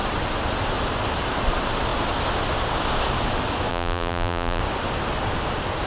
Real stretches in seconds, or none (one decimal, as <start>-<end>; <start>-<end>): 0.0-3.7; 4.6-5.9